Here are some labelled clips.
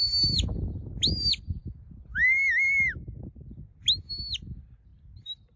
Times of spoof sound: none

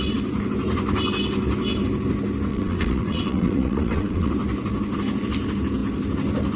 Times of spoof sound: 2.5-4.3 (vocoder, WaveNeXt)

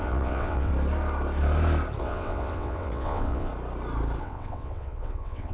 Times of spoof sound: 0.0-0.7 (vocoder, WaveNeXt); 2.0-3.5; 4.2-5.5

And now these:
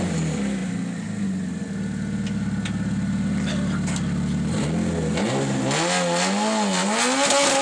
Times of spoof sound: none